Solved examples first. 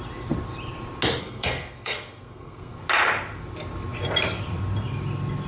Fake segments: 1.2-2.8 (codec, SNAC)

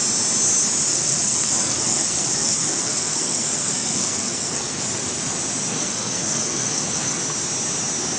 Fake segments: 0.9-4.8 (codec, SNAC); 5.7-7.2

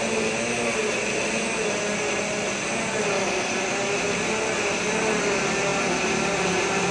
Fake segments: none

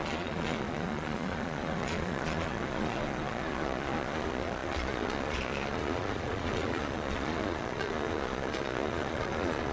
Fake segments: 0.0-9.7 (vocoder, Vocos)

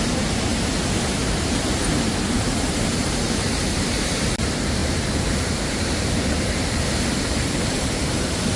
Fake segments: 0.0-0.5 (vocoder, BigVGAN v2); 1.1-8.6

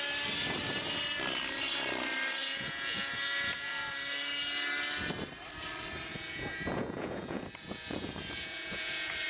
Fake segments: 2.4-3.7 (vocoder, Vocos); 6.1-9.3

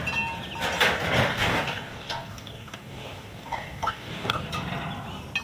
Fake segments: 1.3-4.5 (codec, DAC)